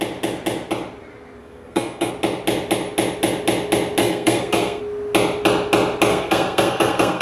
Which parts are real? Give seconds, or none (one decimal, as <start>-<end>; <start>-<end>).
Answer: 0.0-1.4; 2.1-4.0; 4.8-6.1